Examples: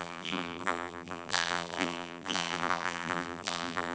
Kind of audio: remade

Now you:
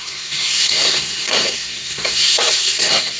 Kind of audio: remade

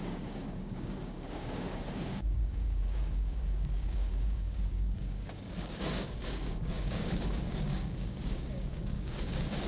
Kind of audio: remade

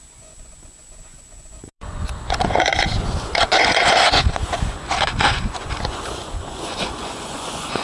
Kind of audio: remade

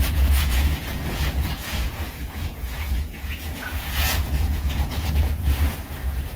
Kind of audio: remade